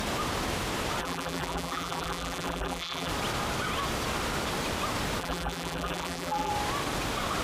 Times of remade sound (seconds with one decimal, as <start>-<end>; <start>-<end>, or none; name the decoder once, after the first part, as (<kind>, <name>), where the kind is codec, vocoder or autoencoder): 1.0-3.1 (vocoder, BigVGAN v2); 5.2-6.5